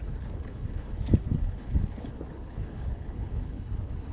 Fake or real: fake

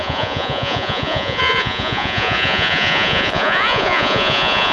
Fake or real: fake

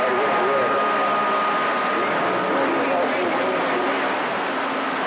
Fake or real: real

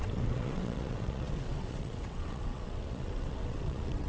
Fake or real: fake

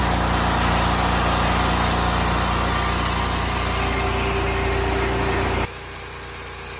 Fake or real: real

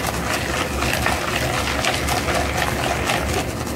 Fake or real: real